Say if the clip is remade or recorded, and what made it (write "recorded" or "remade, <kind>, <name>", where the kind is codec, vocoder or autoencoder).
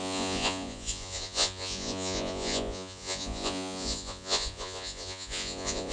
remade, vocoder, Vocos